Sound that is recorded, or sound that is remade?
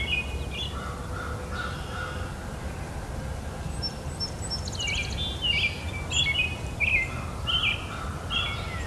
recorded